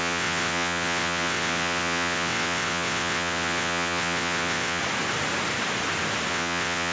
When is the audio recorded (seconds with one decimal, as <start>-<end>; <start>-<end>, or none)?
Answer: 4.8-6.3